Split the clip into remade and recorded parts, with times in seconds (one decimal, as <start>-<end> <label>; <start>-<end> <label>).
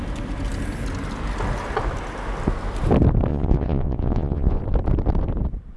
0.0-3.3 recorded; 3.3-4.6 remade; 4.6-5.8 recorded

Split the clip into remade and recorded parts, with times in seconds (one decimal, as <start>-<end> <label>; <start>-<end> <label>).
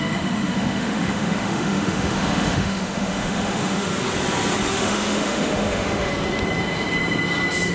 0.0-3.9 remade; 3.9-4.7 recorded; 4.7-6.1 remade; 6.1-7.7 recorded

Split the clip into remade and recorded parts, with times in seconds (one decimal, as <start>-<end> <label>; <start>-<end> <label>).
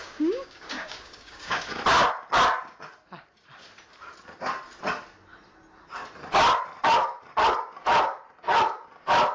0.0-1.8 remade; 1.8-9.3 recorded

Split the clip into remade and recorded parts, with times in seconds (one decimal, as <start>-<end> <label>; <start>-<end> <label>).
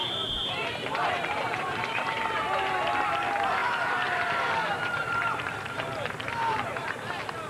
0.0-2.2 remade; 2.2-3.6 recorded; 3.6-7.5 remade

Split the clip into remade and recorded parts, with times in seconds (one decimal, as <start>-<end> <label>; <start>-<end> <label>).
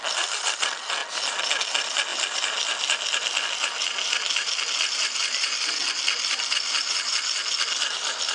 0.0-8.3 recorded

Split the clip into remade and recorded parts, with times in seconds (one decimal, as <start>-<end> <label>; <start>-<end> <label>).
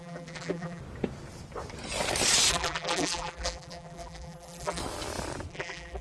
0.0-0.8 remade; 0.8-2.5 recorded; 2.5-4.8 remade; 4.8-5.5 recorded; 5.5-6.0 remade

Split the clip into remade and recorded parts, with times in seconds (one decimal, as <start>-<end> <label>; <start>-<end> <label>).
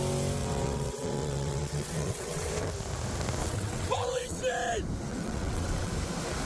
0.0-0.4 recorded; 0.4-2.5 remade; 2.5-3.4 recorded; 3.4-4.4 remade; 4.4-5.1 recorded; 5.1-5.9 remade; 5.9-6.4 recorded